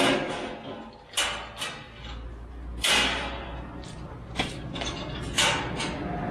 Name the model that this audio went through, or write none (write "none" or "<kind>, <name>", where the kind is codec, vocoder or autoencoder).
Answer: none